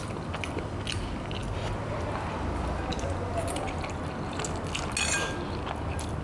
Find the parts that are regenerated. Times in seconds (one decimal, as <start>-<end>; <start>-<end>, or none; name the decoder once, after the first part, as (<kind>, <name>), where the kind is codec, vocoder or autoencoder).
none